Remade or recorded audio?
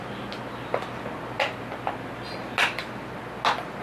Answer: recorded